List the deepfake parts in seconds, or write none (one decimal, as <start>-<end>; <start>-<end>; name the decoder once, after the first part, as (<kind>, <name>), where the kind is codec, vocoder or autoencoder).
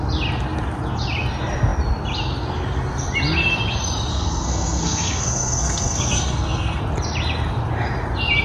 4.1-6.8 (codec, SNAC)